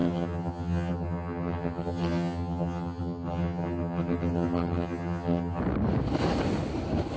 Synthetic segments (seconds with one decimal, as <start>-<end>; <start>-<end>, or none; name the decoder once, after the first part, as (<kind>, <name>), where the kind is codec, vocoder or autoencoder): 0.0-5.6 (vocoder, HiFi-GAN)